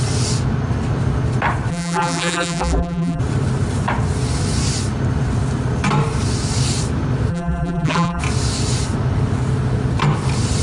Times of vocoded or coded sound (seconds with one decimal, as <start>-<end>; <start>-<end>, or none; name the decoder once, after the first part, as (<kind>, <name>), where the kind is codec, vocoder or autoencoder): 1.7-3.2 (vocoder, BigVGAN v2); 7.3-8.2